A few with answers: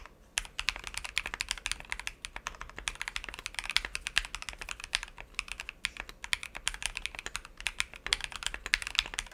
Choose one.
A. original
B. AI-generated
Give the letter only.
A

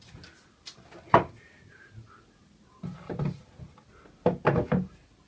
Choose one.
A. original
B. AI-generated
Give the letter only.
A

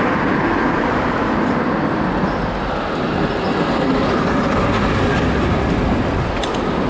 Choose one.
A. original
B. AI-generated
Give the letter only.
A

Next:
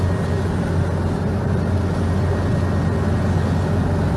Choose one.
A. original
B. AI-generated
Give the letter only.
A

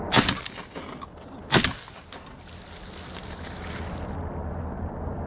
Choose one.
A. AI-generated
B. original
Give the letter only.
B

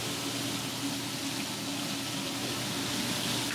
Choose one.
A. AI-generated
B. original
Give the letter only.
B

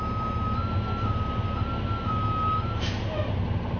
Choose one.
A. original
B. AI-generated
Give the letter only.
A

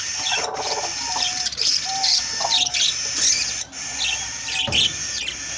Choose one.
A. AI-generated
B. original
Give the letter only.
B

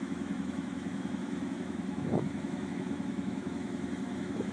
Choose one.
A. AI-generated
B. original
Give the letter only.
A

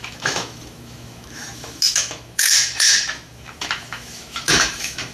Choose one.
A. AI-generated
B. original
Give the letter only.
A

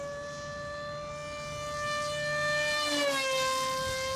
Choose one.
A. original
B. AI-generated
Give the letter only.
A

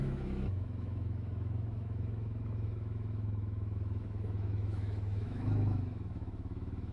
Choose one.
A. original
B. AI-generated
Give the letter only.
B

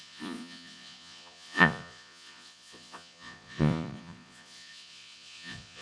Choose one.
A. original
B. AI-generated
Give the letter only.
B